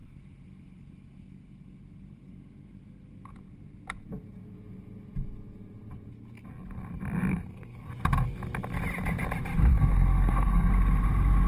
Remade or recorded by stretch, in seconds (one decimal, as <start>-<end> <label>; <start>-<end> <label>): 0.0-7.3 recorded; 7.3-7.9 remade; 7.9-9.7 recorded; 9.7-10.7 remade; 10.7-11.5 recorded